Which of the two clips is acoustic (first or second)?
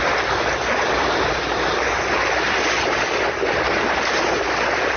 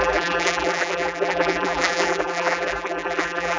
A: first